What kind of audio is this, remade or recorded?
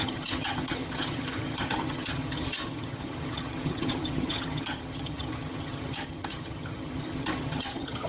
remade